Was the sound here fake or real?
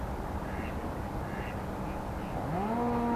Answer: real